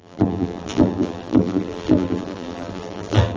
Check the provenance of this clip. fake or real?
fake